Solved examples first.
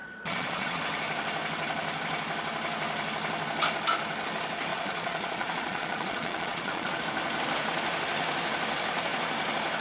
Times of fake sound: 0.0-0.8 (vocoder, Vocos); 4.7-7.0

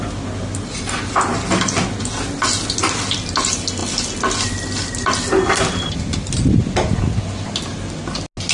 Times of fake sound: none

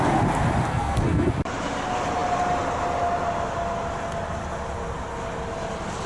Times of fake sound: 0.7-1.3 (codec, SNAC)

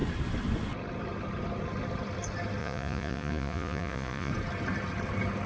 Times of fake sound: 2.6-4.3 (vocoder, Vocos)